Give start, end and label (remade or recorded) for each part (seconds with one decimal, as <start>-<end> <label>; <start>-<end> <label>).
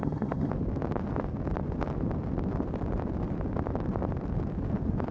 0.0-0.5 remade; 0.5-5.1 recorded